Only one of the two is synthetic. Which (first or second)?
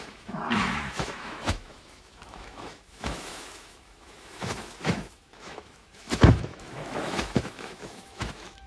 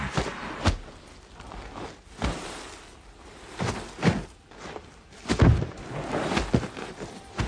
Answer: first